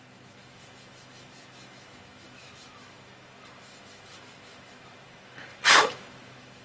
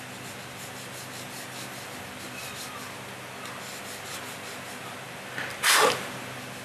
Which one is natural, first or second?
second